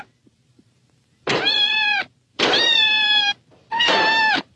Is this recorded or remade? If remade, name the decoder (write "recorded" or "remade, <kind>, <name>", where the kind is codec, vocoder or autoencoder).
remade, vocoder, BigVGAN v2